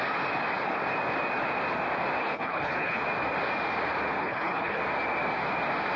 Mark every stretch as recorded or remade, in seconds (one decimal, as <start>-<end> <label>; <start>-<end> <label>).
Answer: 0.0-2.2 recorded; 2.2-3.0 remade; 3.0-4.2 recorded; 4.2-4.8 remade; 4.8-6.0 recorded